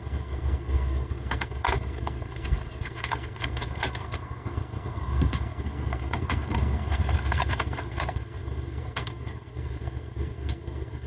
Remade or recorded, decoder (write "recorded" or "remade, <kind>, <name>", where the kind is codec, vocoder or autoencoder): remade, codec, SNAC